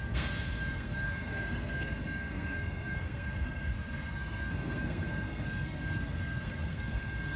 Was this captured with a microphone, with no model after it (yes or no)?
no